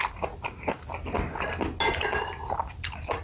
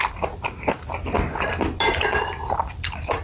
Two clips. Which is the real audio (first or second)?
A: first